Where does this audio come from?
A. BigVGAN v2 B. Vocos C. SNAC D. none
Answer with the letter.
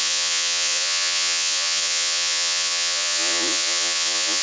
B